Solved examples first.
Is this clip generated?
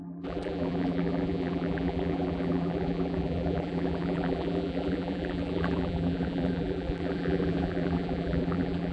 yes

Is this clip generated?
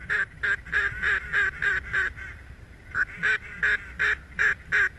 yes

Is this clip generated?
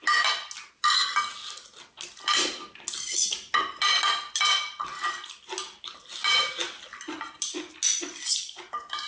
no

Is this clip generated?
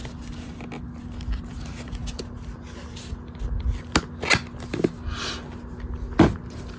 no